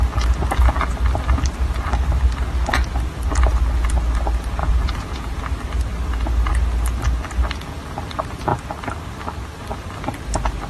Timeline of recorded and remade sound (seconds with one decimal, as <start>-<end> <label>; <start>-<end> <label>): 0.0-4.6 recorded; 4.6-5.4 remade; 5.4-10.7 recorded